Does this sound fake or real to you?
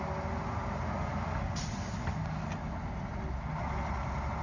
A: real